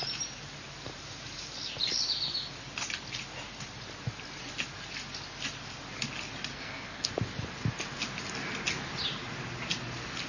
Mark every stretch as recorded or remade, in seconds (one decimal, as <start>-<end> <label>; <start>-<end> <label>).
0.0-6.5 recorded; 6.5-7.1 remade; 7.1-10.3 recorded